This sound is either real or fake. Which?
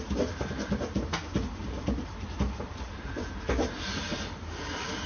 real